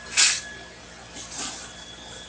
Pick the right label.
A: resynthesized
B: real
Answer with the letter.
B